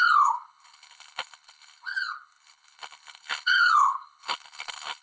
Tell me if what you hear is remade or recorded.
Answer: remade